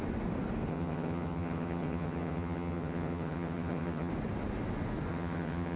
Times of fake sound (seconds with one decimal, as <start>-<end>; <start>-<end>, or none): 0.7-4.1; 5.1-5.8